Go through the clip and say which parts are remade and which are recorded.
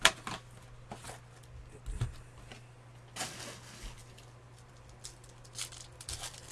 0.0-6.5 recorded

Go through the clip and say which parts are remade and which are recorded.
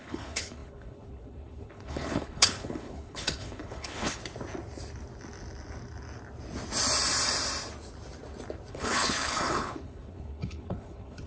0.0-4.2 remade; 4.2-8.7 recorded; 8.7-11.3 remade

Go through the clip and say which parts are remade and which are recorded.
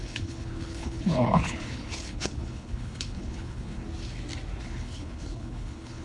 0.0-3.8 remade; 3.8-4.6 recorded; 4.6-6.0 remade